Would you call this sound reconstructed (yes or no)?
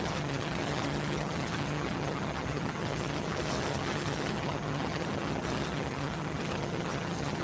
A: yes